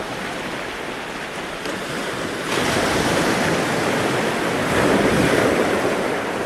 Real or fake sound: real